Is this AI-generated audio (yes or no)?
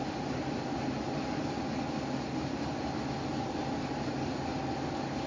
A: no